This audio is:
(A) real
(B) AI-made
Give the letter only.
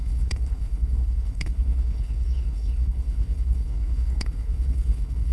B